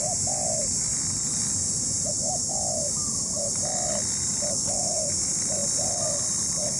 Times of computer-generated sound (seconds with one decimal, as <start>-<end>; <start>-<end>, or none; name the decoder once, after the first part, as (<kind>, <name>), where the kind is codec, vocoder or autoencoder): none

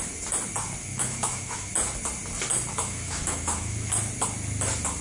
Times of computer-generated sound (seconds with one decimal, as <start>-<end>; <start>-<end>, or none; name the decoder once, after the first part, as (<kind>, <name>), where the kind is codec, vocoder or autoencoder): 0.8-1.7 (autoencoder, DAC-VAE); 2.7-3.9

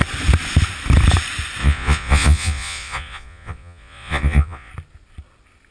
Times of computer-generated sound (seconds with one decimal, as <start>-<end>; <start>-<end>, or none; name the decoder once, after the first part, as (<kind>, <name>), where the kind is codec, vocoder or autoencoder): 1.6-4.7 (vocoder, Vocos)

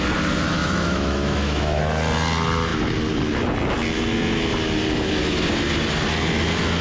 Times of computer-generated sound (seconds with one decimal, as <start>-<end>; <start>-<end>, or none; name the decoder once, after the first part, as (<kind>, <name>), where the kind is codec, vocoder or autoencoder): 0.6-1.8 (autoencoder, DAC-VAE)

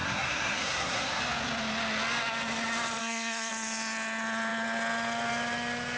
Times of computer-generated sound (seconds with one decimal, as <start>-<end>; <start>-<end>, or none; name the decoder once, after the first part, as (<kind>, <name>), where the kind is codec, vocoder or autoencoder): 0.0-1.2 (codec, SNAC); 3.0-3.5

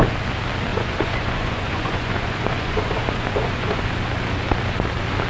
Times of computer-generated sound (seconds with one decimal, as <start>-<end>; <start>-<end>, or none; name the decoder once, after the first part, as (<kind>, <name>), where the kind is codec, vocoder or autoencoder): 0.7-3.9 (vocoder, Vocos)

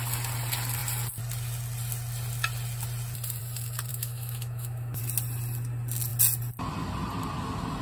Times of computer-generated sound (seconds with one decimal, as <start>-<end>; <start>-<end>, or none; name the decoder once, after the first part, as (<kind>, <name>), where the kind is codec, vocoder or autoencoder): 3.9-5.0 (autoencoder, DAC-VAE)